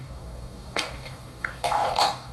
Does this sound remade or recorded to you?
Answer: remade